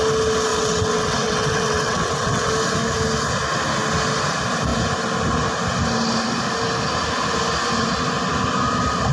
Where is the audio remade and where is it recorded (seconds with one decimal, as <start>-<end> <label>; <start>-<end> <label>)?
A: 0.0-0.5 recorded; 0.5-2.5 remade; 2.5-9.1 recorded